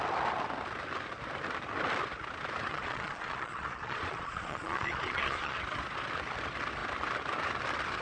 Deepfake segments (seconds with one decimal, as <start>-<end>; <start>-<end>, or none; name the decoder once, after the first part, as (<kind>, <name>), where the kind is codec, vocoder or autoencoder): 2.7-5.6 (vocoder, Vocos)